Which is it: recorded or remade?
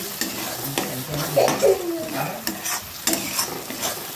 recorded